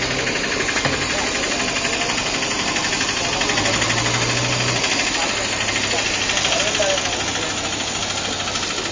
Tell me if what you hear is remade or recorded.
recorded